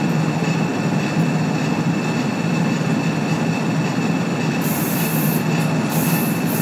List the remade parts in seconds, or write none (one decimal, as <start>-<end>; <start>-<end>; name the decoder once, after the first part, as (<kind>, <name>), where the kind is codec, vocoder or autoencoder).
none